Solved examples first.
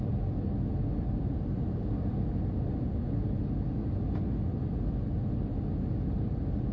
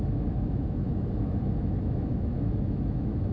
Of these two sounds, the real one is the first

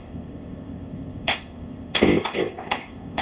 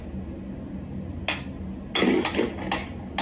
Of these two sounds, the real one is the second